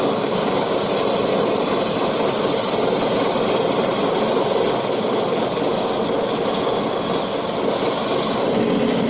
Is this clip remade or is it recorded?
recorded